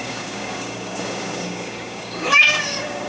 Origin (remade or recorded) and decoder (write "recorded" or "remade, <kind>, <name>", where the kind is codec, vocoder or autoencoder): remade, codec, DAC